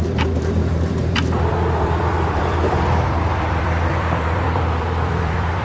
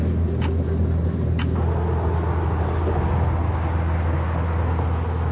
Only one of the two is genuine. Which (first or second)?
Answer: second